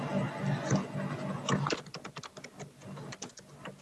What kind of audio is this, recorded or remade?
recorded